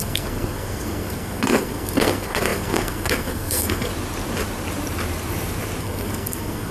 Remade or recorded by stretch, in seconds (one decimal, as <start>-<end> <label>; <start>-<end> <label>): 0.0-3.9 remade; 3.9-5.8 recorded; 5.8-6.7 remade